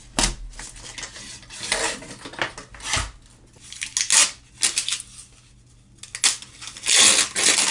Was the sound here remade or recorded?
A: recorded